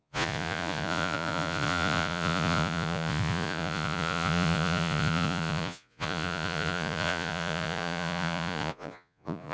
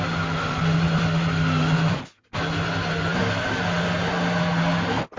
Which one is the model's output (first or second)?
first